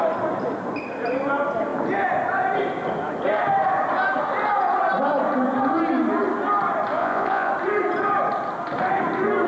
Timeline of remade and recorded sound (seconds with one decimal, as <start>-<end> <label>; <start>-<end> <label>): 0.0-7.0 recorded; 7.0-7.5 remade; 7.5-9.5 recorded